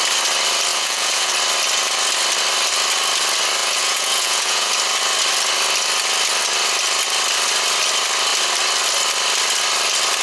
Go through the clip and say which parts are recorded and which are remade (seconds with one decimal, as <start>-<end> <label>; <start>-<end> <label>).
0.0-0.7 recorded; 0.7-1.3 remade; 1.3-3.6 recorded; 3.6-4.7 remade; 4.7-10.2 recorded